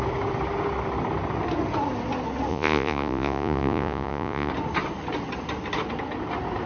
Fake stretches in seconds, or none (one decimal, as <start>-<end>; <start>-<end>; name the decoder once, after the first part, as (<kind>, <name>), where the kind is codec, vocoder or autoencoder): 2.5-4.5 (vocoder, Vocos)